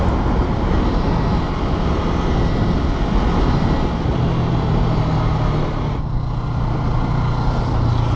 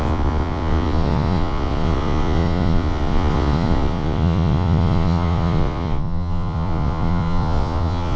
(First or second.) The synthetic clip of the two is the second